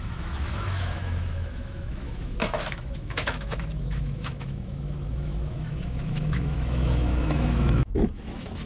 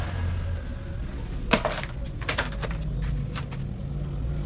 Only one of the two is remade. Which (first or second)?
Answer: first